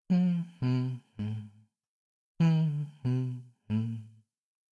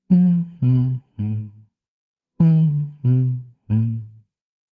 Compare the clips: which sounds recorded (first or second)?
first